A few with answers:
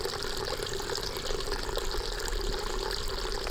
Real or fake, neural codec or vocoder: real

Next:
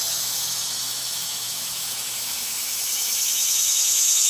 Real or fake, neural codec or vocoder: fake, autoencoder, DAC-VAE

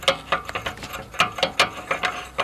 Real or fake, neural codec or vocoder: real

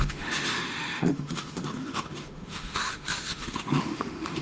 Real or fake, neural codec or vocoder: fake, autoencoder, DAC-VAE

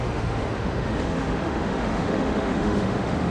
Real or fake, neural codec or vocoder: fake, autoencoder, DAC-VAE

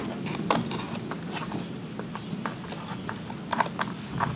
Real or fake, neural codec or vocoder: real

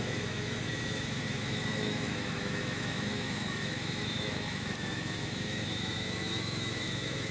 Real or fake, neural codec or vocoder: fake, autoencoder, DAC-VAE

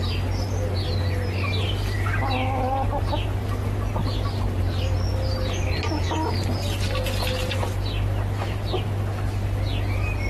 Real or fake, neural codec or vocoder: real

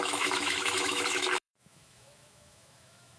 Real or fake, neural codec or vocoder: fake, autoencoder, DAC-VAE